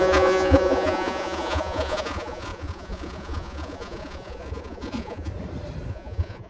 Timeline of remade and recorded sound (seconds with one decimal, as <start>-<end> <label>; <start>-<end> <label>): 0.0-5.3 remade; 5.3-5.9 recorded; 5.9-6.5 remade